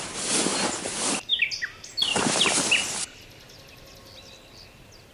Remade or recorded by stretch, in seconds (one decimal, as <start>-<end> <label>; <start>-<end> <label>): 0.0-5.1 recorded